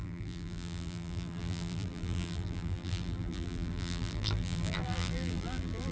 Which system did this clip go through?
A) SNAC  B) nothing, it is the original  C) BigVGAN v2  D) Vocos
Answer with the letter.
C